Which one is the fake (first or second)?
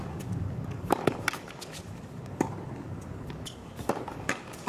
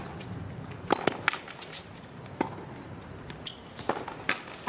first